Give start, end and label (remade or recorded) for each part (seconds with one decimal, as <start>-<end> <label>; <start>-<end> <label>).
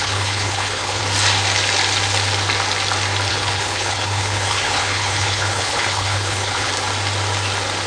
0.0-1.0 remade; 1.0-3.3 recorded; 3.3-6.7 remade; 6.7-7.9 recorded